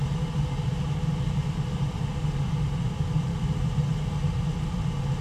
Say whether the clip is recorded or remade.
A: recorded